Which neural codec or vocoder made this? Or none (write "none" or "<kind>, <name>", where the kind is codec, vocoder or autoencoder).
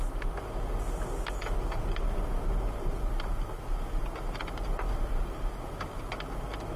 none